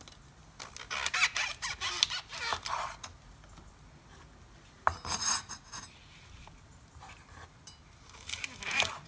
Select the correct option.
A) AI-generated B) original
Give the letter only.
B